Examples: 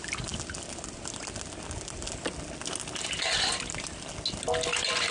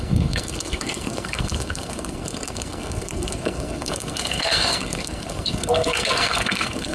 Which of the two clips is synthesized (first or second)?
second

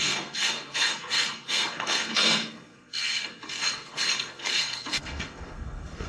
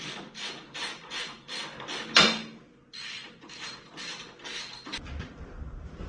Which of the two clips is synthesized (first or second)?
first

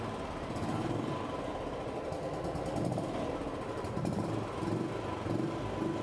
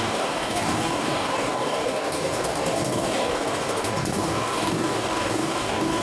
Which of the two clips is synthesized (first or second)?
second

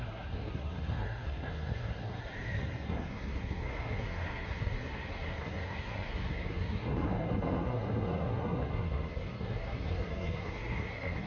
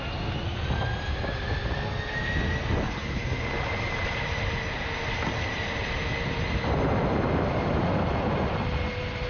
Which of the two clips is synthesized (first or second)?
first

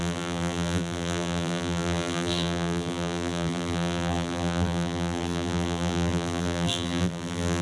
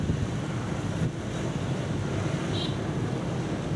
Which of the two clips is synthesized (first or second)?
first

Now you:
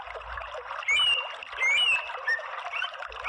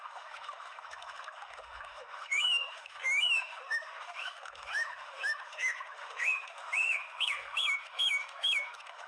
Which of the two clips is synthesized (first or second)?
second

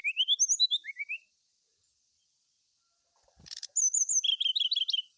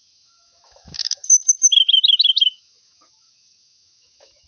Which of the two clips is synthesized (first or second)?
second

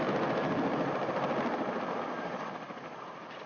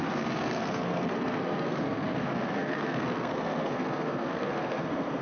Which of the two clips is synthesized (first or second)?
second